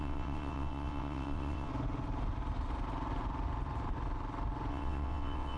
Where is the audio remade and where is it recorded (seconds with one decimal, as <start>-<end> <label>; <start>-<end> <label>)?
0.0-1.7 remade; 1.7-4.7 recorded; 4.7-5.6 remade

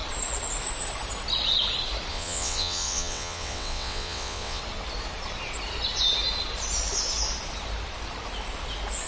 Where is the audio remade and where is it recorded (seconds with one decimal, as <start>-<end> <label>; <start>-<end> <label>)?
0.0-2.1 recorded; 2.1-4.6 remade; 4.6-9.1 recorded